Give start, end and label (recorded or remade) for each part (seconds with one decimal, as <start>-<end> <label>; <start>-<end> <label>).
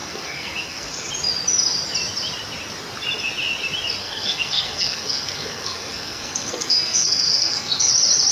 0.0-1.1 remade; 1.1-4.0 recorded; 4.0-7.9 remade; 7.9-8.3 recorded